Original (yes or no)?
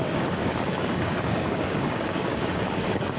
no